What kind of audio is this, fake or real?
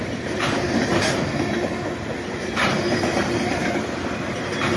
fake